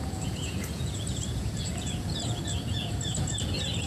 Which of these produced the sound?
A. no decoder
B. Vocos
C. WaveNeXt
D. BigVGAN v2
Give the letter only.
B